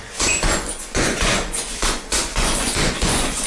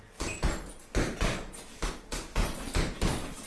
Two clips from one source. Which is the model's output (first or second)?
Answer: first